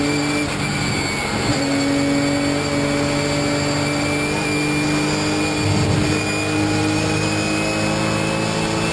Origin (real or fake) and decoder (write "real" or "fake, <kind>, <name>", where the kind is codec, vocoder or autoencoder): real